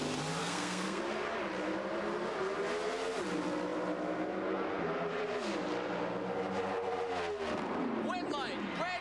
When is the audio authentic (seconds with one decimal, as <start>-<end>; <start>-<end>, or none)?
0.0-0.4; 1.0-9.0